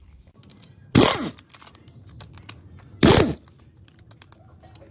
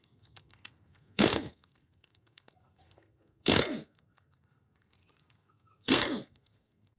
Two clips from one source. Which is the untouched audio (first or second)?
first